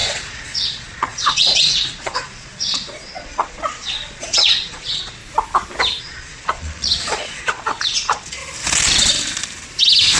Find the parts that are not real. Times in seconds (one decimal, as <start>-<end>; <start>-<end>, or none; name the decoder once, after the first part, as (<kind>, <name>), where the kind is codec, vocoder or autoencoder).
0.0-5.2 (vocoder, Vocos); 6.0-8.4